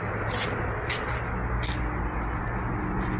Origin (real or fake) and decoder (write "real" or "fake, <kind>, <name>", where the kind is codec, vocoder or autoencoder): real